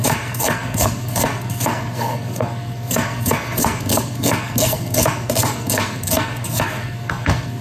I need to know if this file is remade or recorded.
remade